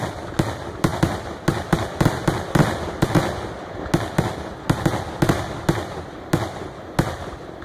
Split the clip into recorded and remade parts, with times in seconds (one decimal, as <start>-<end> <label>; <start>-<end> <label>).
0.0-7.6 recorded